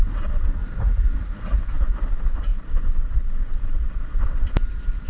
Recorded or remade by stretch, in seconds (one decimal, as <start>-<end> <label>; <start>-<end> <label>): 0.0-0.6 recorded; 0.6-1.6 remade; 1.6-5.1 recorded